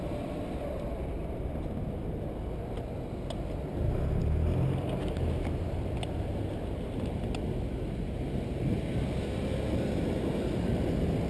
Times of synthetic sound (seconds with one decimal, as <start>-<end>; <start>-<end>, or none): none

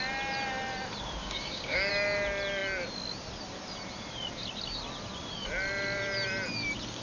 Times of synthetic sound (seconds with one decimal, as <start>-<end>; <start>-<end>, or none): 1.2-1.9